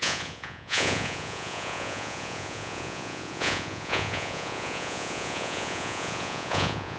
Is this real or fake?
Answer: fake